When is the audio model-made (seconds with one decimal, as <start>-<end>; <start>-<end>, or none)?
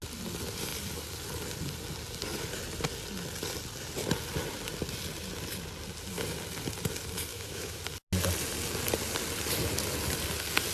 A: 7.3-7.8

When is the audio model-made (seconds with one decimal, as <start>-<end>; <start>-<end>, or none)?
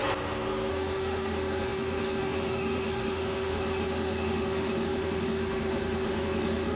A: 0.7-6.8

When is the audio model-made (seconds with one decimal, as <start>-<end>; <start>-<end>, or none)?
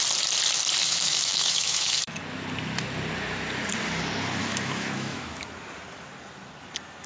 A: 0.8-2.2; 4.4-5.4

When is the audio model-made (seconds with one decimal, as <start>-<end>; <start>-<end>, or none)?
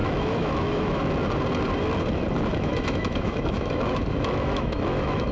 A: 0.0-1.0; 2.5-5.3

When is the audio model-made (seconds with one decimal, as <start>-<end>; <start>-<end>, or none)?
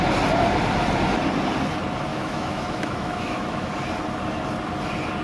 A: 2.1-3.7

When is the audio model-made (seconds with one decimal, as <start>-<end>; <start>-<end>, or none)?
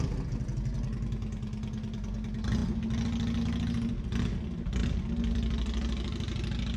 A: none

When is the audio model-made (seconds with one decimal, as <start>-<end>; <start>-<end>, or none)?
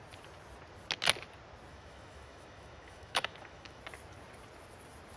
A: 1.7-3.8